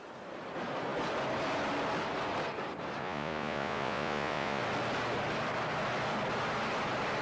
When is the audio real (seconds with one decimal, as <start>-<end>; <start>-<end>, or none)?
0.0-3.0; 4.6-7.2